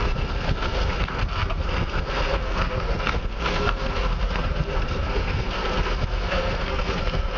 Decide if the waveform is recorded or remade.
remade